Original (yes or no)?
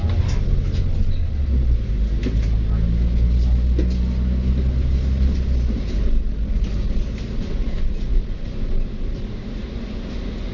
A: yes